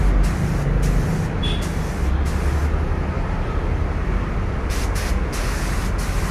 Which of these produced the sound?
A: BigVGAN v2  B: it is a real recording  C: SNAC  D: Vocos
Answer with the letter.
B